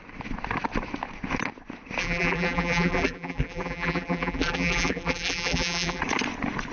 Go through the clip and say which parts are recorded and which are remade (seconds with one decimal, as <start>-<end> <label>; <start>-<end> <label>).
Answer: 0.0-2.0 recorded; 2.0-6.0 remade; 6.0-6.7 recorded